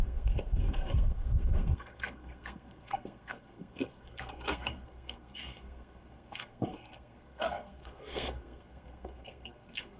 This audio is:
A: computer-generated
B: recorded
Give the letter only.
A